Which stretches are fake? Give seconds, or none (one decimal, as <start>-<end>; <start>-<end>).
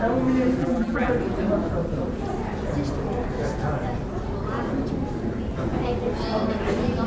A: 0.6-1.1